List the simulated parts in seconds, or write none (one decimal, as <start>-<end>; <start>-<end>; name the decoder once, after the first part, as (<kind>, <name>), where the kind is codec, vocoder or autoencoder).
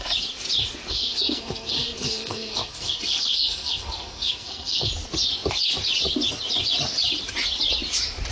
0.9-4.9 (codec, SNAC)